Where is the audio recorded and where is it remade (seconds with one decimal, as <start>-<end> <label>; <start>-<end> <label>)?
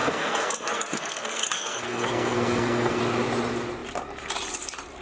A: 0.0-3.0 remade; 3.0-5.0 recorded